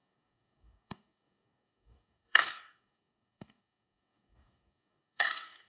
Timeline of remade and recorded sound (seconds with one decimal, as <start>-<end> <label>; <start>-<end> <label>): 0.0-5.7 remade